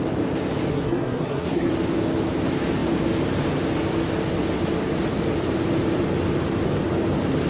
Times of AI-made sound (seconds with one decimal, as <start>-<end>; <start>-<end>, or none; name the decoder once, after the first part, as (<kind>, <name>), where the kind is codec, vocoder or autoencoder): 0.7-1.7 (codec, SNAC)